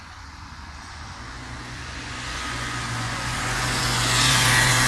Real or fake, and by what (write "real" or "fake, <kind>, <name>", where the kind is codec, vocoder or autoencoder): fake, vocoder, Vocos